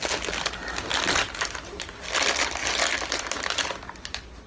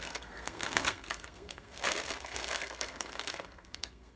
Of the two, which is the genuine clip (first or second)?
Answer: first